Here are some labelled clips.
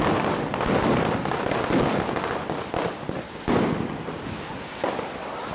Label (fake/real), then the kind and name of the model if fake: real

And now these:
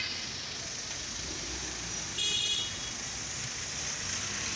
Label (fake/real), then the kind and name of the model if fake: real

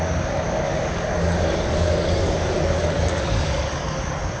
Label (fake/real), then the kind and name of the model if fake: fake, codec, DAC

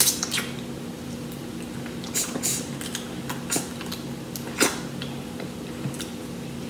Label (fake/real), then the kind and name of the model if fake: real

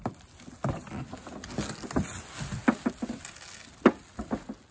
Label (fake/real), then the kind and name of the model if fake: real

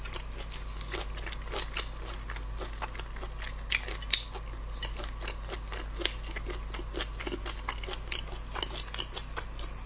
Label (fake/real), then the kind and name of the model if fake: real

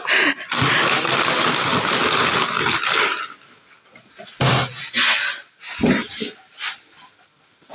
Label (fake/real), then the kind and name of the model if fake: real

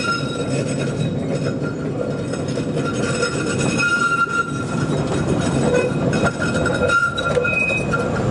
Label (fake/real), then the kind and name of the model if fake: real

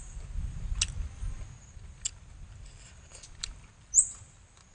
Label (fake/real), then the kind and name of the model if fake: real